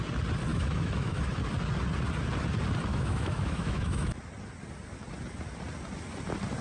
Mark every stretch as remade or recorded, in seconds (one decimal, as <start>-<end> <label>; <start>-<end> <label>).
0.0-0.5 recorded; 0.5-1.2 remade; 1.2-2.9 recorded; 2.9-4.2 remade; 4.2-6.6 recorded